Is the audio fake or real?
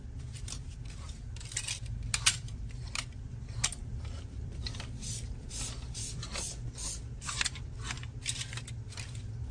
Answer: real